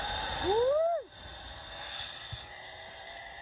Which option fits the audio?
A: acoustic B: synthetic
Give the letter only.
A